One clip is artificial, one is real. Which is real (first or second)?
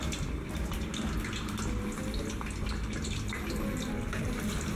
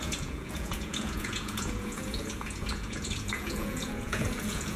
first